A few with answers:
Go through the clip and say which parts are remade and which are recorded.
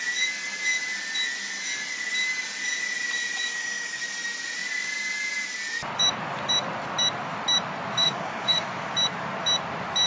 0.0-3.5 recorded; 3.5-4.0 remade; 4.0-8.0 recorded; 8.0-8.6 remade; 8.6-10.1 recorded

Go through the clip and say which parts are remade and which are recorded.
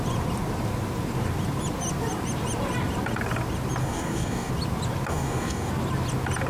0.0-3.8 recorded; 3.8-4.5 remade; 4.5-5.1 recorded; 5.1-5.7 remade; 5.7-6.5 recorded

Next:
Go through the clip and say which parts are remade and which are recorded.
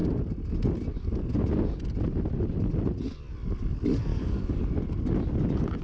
0.0-4.1 recorded; 4.1-4.6 remade; 4.6-5.8 recorded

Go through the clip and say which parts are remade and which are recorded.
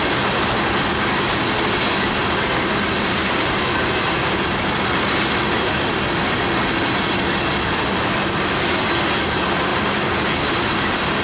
0.0-11.2 recorded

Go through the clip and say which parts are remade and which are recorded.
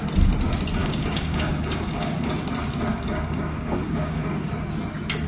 0.0-0.8 recorded; 0.8-2.3 remade; 2.3-2.9 recorded; 2.9-4.5 remade; 4.5-5.3 recorded